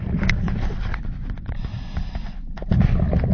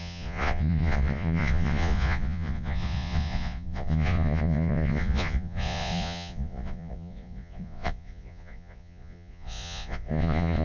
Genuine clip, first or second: first